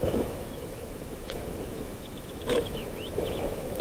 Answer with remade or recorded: remade